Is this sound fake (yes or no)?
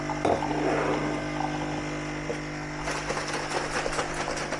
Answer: no